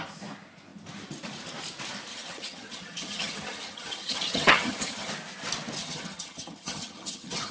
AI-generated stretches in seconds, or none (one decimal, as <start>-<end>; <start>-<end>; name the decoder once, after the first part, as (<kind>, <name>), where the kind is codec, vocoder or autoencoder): 2.1-5.1 (vocoder, HiFi-GAN); 5.8-7.5